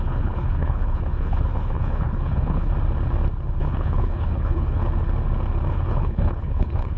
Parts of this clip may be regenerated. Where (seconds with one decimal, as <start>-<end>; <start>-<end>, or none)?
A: 0.0-2.7; 3.6-4.8; 5.7-7.0